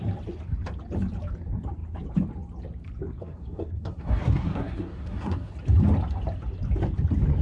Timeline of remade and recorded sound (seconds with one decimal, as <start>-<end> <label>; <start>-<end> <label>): 0.0-3.2 recorded; 3.2-5.5 remade; 5.5-7.4 recorded